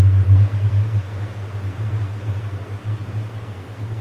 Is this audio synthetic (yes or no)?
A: yes